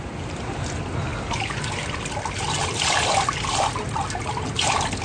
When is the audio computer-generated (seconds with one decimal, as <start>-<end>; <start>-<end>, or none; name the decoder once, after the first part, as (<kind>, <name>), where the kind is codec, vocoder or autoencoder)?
none